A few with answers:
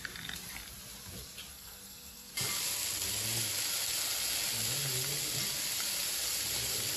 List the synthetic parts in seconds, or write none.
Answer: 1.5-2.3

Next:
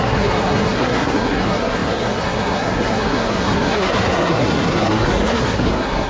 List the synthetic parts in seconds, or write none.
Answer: 0.0-6.1

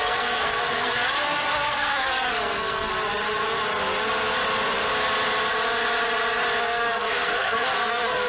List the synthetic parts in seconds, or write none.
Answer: 0.0-2.9; 6.6-8.3

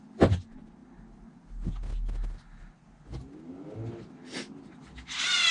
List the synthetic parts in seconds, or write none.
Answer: none